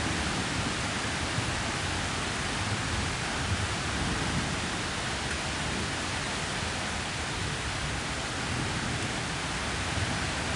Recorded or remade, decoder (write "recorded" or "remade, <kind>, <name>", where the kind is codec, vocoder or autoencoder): recorded